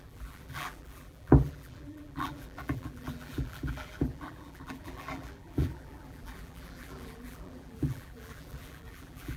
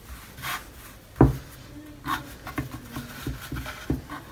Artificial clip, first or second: first